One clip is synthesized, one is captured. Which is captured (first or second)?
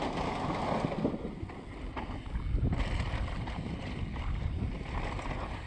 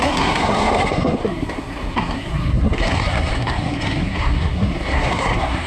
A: first